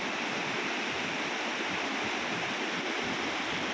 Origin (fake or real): real